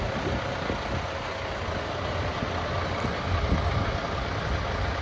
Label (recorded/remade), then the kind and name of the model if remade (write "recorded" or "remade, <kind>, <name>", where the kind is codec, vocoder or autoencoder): recorded